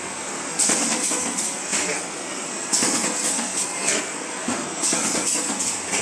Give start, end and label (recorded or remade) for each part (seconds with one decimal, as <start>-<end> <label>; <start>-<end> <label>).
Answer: 0.0-6.0 remade